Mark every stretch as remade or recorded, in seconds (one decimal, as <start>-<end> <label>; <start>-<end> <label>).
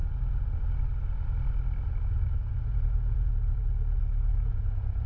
0.0-2.0 recorded; 2.0-3.6 remade; 3.6-4.3 recorded; 4.3-5.1 remade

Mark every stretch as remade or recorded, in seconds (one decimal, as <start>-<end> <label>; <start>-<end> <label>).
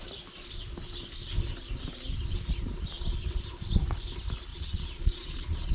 0.0-4.5 recorded; 4.5-5.7 remade